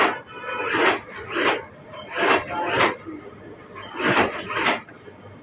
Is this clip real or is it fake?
real